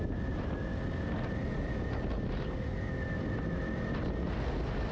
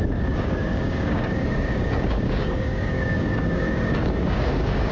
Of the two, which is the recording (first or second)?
first